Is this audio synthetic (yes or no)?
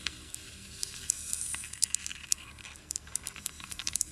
yes